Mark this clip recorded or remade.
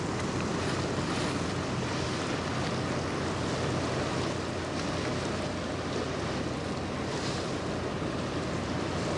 recorded